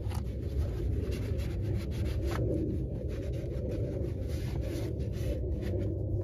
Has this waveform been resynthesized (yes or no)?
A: no